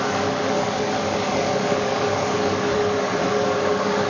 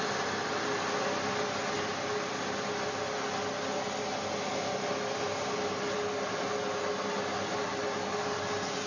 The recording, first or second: second